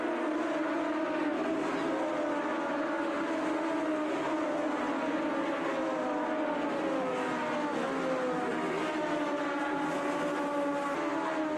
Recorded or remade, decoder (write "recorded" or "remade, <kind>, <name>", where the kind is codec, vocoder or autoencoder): recorded